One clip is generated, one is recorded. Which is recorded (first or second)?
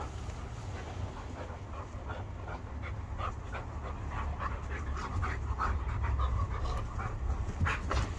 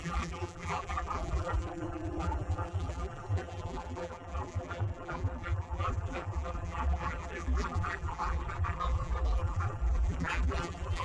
first